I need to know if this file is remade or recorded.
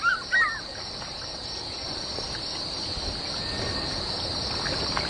recorded